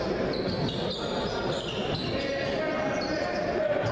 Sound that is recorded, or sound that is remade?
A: recorded